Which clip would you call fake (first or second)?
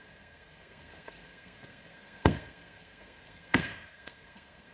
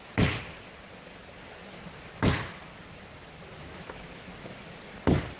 first